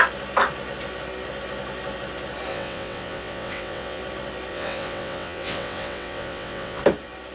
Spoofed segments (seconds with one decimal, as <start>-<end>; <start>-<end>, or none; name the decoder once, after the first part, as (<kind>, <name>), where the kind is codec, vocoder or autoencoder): 2.5-4.0 (vocoder, WaveNeXt); 4.5-6.8